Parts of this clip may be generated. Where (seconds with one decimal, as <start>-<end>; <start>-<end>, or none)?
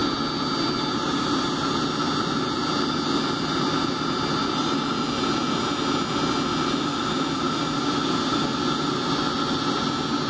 none